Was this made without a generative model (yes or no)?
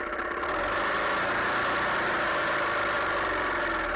yes